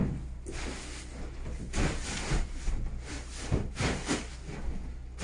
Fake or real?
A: real